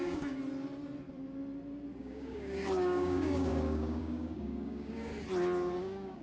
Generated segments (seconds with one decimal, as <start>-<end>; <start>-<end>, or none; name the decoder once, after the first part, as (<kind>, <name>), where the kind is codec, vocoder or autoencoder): 0.0-0.4 (codec, DAC); 2.0-5.1; 5.8-6.2